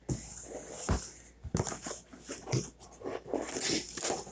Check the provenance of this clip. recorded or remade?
recorded